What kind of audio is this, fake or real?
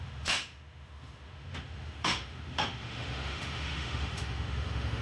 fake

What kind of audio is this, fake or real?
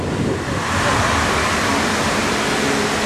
real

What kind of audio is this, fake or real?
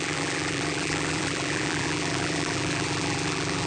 fake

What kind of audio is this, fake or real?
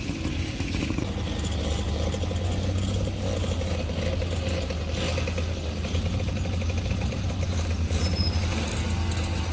real